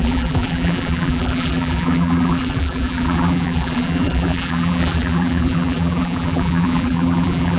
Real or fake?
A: fake